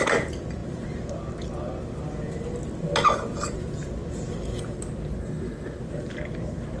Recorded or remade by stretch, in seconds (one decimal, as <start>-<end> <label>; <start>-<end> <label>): 0.0-5.2 recorded; 5.2-5.8 remade; 5.8-6.8 recorded

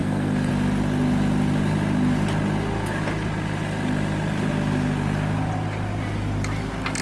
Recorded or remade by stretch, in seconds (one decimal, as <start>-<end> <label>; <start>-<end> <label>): 0.0-0.5 remade; 0.5-7.0 recorded

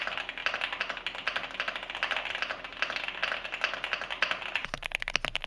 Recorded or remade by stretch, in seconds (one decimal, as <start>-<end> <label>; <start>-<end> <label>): 0.0-5.5 recorded

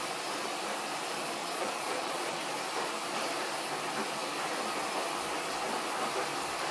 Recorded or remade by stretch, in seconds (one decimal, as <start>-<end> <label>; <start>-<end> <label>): 0.0-1.4 recorded; 1.4-2.4 remade; 2.4-6.7 recorded

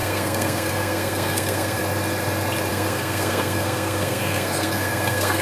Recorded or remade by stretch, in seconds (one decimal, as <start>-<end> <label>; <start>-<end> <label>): 0.0-1.8 remade; 1.8-2.7 recorded; 2.7-5.4 remade

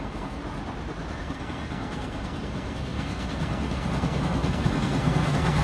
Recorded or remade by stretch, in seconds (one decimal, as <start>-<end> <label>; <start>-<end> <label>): 0.0-0.4 remade; 0.4-1.2 recorded; 1.2-5.6 remade

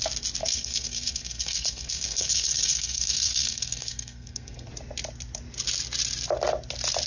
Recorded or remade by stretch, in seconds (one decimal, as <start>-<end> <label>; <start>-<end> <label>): 0.0-0.4 recorded; 0.4-4.7 remade; 4.7-7.1 recorded

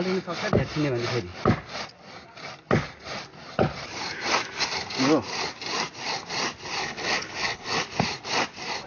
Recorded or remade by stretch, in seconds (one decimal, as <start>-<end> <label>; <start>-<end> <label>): 0.0-6.8 recorded; 6.8-7.8 remade; 7.8-8.9 recorded